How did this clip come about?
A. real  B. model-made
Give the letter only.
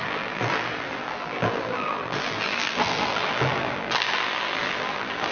B